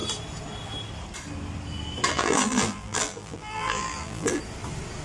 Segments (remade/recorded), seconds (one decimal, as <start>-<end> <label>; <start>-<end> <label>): 0.0-2.1 recorded; 2.1-4.4 remade; 4.4-5.0 recorded